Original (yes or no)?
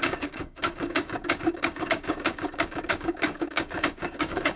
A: no